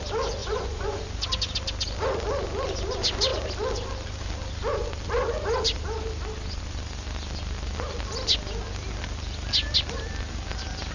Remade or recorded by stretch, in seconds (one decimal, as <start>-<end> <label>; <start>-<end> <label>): 0.0-0.4 recorded; 0.4-1.0 remade; 1.0-10.9 recorded